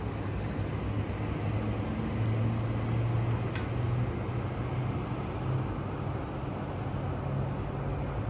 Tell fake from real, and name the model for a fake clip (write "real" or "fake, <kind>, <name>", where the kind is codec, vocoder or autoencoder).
real